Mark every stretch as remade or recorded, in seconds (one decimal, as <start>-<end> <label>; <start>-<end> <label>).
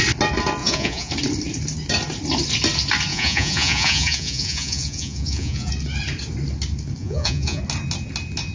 0.0-0.6 recorded; 0.6-1.1 remade; 1.1-3.1 recorded; 3.1-5.7 remade; 5.7-7.0 recorded; 7.0-7.6 remade; 7.6-8.5 recorded